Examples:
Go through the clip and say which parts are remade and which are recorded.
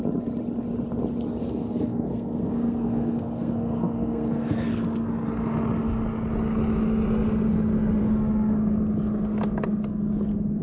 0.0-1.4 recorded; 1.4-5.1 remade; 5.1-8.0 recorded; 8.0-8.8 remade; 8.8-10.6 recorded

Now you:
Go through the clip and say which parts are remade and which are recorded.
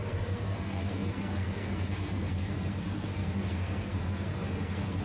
0.0-5.0 remade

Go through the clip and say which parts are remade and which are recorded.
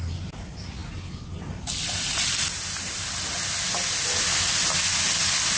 0.0-5.6 recorded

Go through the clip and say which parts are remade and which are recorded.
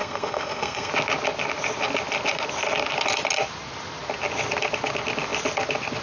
0.0-0.9 remade; 0.9-6.0 recorded